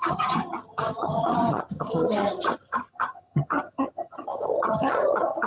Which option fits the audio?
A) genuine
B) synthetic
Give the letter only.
B